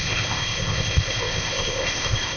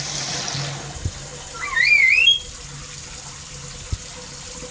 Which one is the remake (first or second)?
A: first